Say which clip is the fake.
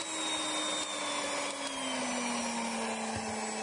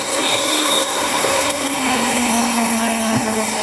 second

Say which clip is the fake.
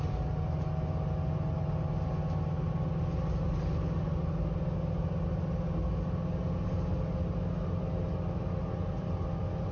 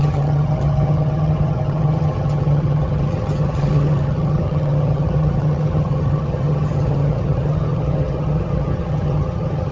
second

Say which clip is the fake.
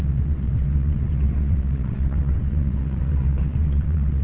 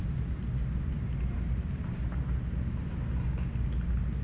first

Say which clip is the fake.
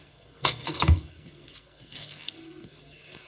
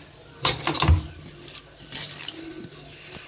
first